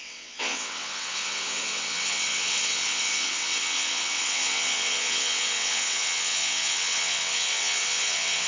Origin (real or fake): fake